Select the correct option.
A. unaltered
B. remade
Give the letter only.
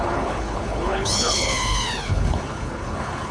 B